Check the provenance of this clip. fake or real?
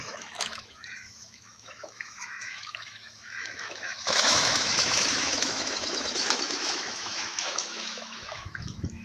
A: fake